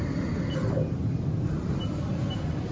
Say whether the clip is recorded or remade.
recorded